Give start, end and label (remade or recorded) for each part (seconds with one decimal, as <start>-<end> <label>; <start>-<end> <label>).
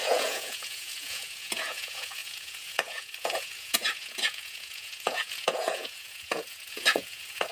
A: 0.0-7.5 remade